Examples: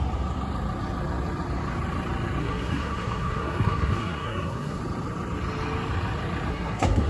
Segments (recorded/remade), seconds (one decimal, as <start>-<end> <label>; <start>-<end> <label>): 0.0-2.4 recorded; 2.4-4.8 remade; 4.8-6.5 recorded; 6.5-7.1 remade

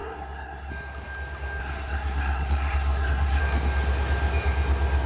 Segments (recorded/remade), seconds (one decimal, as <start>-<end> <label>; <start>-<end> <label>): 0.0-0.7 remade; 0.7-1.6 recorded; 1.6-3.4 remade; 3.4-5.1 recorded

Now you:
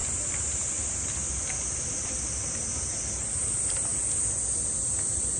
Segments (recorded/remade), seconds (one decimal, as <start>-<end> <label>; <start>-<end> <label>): 0.0-3.9 remade; 3.9-4.8 recorded; 4.8-5.4 remade

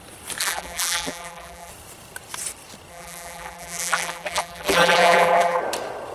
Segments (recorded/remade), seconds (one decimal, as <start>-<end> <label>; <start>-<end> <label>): 0.0-0.4 recorded; 0.4-1.7 remade; 1.7-2.9 recorded; 2.9-5.6 remade; 5.6-6.1 recorded

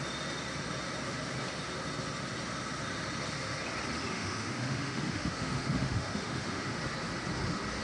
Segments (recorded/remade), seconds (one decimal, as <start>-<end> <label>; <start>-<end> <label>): 0.0-4.1 recorded; 4.1-6.8 remade; 6.8-7.8 recorded

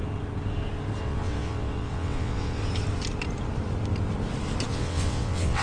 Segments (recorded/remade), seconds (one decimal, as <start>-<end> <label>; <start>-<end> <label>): 0.0-1.0 recorded; 1.0-2.6 remade; 2.6-4.7 recorded; 4.7-5.6 remade

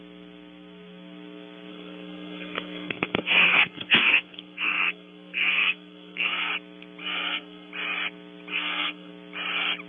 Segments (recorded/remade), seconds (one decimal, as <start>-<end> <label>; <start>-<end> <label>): 0.0-1.7 recorded; 1.7-6.5 remade; 6.5-7.0 recorded; 7.0-7.7 remade; 7.7-8.5 recorded; 8.5-9.1 remade; 9.1-9.9 recorded